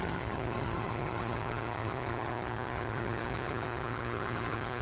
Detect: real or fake fake